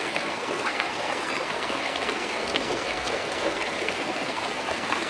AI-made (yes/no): yes